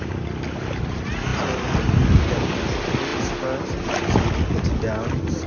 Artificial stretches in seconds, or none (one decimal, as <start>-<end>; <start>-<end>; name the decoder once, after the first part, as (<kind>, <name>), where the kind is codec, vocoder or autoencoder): none